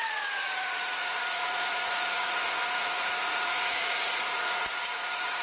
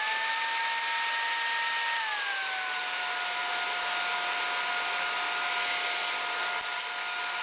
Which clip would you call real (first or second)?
second